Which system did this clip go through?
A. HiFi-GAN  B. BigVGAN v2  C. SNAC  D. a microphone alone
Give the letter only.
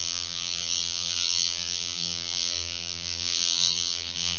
B